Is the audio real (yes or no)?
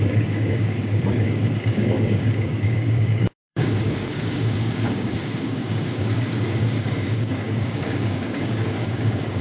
no